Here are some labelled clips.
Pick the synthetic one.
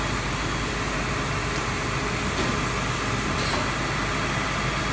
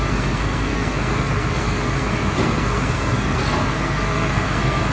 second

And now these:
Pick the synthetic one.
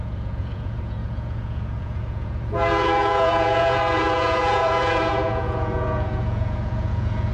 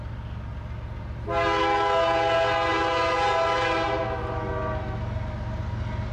first